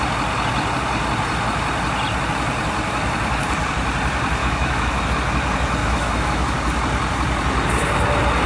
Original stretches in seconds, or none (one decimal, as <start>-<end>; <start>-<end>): 0.0-4.4; 4.9-5.8; 6.4-8.5